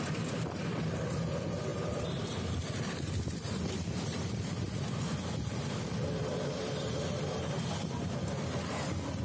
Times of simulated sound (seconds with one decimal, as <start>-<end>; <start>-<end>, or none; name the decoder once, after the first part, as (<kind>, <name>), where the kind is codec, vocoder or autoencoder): 1.7-4.3 (vocoder, BigVGAN v2)